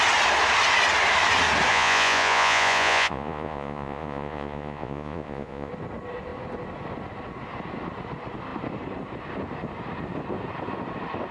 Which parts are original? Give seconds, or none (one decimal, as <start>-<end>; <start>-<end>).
0.0-1.7; 5.7-11.3